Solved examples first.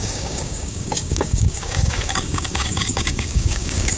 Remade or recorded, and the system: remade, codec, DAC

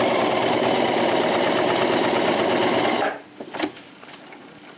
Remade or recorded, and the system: recorded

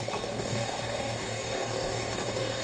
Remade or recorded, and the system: remade, codec, DAC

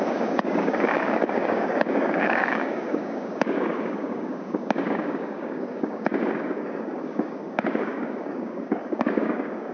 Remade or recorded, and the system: remade, codec, DAC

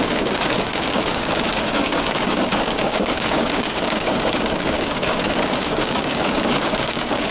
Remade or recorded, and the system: remade, codec, DAC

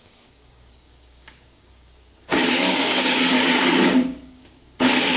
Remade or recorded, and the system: remade, codec, DAC